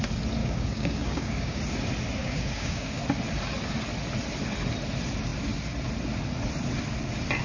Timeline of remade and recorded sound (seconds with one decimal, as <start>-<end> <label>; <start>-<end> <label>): 0.0-0.4 recorded; 0.4-1.6 remade; 1.6-2.2 recorded; 2.2-3.0 remade; 3.0-7.4 recorded